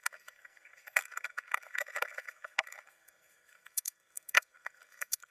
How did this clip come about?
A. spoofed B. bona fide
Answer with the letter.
A